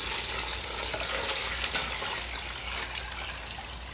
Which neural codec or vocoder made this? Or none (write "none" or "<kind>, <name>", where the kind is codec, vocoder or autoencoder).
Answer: none